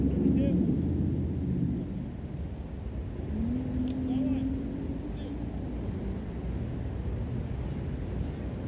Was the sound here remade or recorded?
recorded